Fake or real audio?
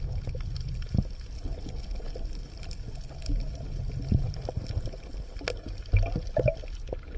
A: real